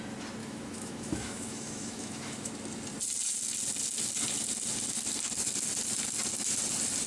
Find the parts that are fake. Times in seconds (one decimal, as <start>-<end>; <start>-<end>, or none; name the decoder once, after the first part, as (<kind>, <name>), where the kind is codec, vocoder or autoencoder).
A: 0.4-2.5 (autoencoder, DAC-VAE)